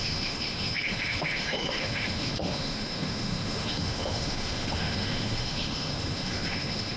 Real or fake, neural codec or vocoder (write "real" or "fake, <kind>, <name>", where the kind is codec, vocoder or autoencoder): fake, autoencoder, DAC-VAE